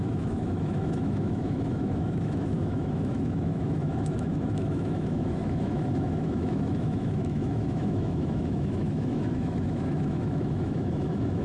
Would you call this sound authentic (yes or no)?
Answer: no